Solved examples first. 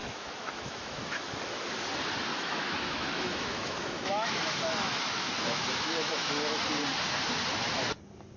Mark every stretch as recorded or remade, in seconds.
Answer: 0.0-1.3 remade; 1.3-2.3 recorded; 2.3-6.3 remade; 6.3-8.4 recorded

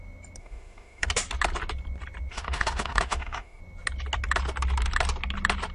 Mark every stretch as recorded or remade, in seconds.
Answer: 0.0-0.4 recorded; 0.4-1.1 remade; 1.1-2.3 recorded; 2.3-3.6 remade; 3.6-5.7 recorded